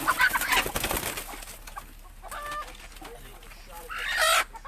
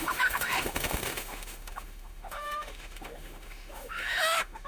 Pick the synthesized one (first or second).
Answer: second